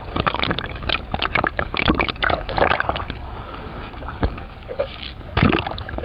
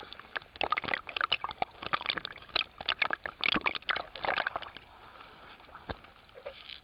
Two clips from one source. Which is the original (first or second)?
second